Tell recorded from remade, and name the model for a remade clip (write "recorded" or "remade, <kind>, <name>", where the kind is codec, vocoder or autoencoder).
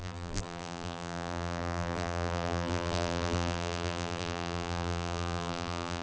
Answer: remade, vocoder, BigVGAN v2